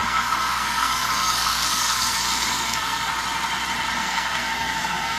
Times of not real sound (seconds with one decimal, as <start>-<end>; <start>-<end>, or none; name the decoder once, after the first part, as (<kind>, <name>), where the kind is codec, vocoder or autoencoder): 0.0-3.1 (codec, SNAC); 4.0-5.2